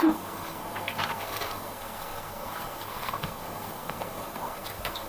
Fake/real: fake